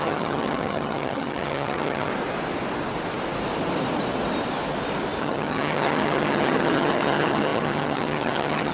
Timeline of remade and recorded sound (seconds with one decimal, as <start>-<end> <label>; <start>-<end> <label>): 0.0-2.1 remade; 2.1-5.2 recorded; 5.2-8.7 remade

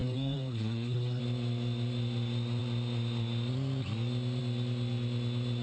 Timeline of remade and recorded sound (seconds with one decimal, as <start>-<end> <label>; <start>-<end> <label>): 0.0-1.2 remade; 1.2-5.6 recorded

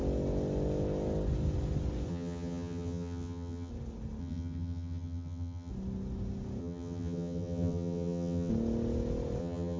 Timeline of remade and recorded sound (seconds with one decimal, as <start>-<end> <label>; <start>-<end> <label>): 0.0-2.1 recorded; 2.1-3.7 remade; 3.7-4.2 recorded; 4.2-5.7 remade; 5.7-6.6 recorded; 6.6-8.5 remade; 8.5-9.4 recorded; 9.4-9.8 remade

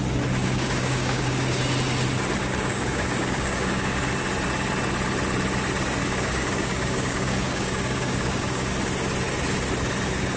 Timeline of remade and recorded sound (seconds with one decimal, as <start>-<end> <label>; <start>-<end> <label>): 0.0-0.4 recorded; 0.4-1.6 remade; 1.6-2.4 recorded; 2.4-4.0 remade; 4.0-6.0 recorded; 6.0-8.7 remade; 8.7-10.4 recorded